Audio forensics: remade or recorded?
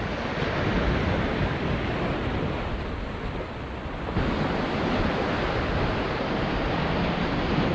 recorded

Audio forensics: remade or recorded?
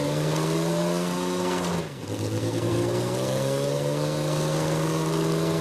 remade